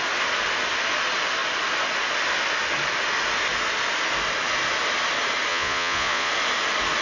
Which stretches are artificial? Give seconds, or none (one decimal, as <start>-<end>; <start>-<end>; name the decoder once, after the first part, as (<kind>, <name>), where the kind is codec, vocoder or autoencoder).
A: 5.5-6.3 (vocoder, Vocos)